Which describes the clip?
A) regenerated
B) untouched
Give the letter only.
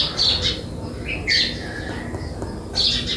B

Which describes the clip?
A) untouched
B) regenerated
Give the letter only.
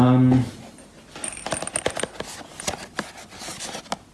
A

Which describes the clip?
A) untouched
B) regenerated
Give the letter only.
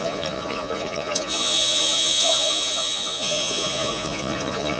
B